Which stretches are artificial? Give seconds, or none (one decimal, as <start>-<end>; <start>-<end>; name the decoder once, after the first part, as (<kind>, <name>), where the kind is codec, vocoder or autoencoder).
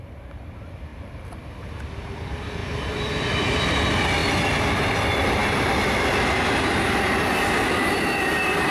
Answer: none